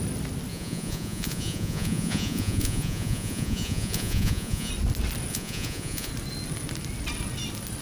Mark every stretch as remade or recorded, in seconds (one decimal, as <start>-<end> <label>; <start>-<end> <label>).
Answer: 0.0-0.5 recorded; 0.5-4.7 remade; 4.7-5.3 recorded; 5.3-6.1 remade; 6.1-7.8 recorded